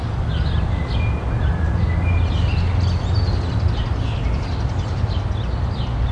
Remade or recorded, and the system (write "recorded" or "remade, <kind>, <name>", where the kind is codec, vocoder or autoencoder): recorded